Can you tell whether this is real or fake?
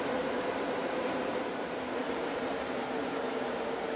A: fake